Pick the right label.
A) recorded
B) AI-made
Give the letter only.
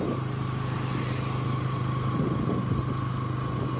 A